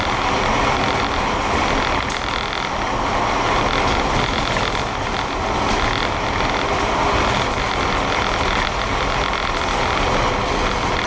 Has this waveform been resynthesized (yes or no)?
no